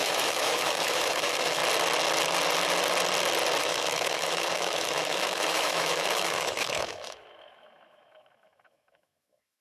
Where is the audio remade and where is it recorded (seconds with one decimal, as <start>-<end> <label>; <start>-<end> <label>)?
0.0-1.6 remade; 1.6-3.6 recorded; 3.6-9.6 remade